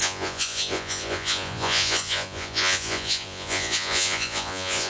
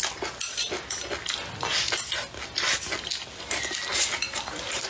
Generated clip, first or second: first